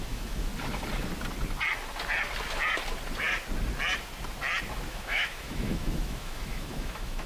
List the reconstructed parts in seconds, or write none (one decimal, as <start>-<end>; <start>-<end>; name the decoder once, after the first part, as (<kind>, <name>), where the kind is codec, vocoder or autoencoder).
0.0-0.5 (autoencoder, DAC-VAE); 4.9-7.3